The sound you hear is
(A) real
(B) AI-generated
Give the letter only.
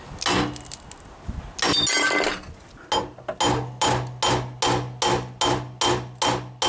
A